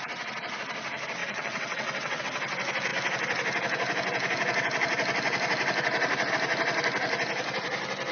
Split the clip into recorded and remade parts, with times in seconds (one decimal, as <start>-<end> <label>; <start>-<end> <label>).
0.0-1.2 recorded; 1.2-2.2 remade; 2.2-8.1 recorded